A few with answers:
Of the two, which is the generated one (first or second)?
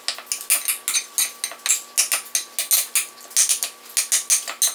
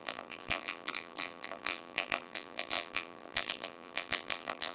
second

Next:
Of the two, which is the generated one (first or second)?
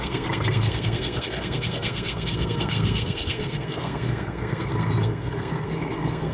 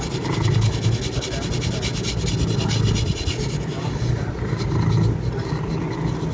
first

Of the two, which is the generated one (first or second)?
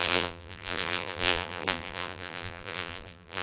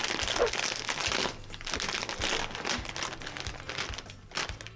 first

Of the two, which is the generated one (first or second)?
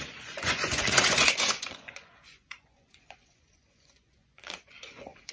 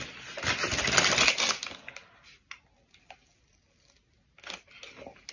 first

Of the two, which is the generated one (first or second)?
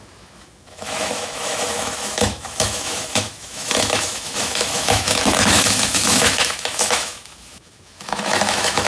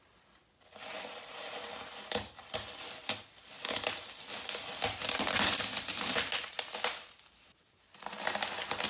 first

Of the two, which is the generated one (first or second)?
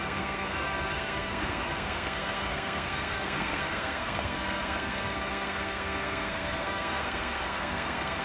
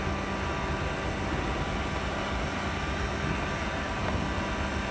first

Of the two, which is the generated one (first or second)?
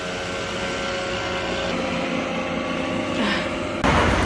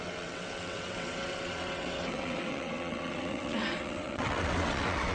second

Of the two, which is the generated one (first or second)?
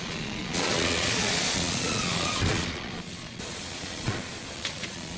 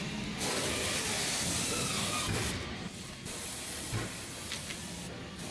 first